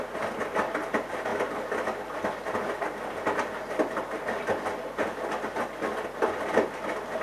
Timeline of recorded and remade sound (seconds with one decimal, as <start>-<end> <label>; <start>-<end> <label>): 0.0-7.2 recorded